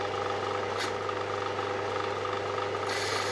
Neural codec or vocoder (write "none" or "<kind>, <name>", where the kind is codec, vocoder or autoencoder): none